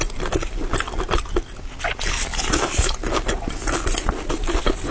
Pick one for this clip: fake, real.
real